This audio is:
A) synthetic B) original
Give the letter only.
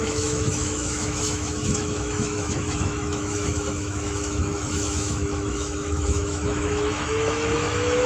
A